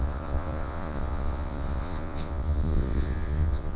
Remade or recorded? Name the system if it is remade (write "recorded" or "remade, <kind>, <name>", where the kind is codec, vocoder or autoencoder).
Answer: remade, vocoder, Vocos